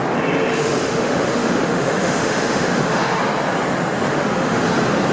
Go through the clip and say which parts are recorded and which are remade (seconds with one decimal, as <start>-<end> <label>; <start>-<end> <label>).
0.0-0.5 recorded; 0.5-3.2 remade; 3.2-4.1 recorded; 4.1-4.6 remade; 4.6-5.1 recorded